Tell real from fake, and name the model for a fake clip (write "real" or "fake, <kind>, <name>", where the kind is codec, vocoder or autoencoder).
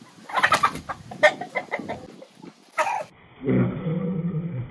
real